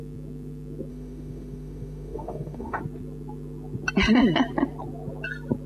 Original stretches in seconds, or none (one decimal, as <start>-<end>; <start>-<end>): 0.0-0.9; 2.8-5.7